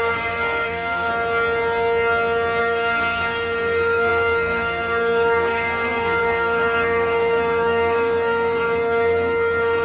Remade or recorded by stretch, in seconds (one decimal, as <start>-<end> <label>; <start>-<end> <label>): 0.0-1.1 remade; 1.1-2.6 recorded; 2.6-9.8 remade